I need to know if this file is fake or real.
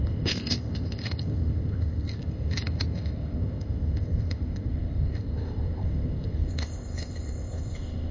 fake